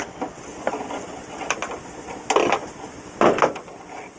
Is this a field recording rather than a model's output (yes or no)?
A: yes